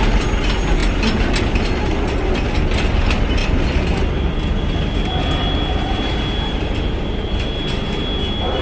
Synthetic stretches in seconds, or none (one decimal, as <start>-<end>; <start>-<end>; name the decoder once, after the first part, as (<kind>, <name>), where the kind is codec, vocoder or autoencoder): none